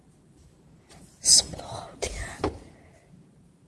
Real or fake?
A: fake